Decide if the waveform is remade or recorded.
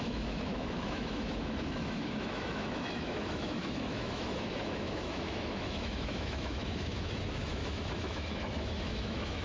remade